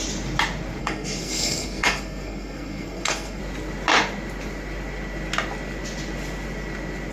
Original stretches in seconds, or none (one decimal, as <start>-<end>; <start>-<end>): 0.0-0.8; 3.4-7.1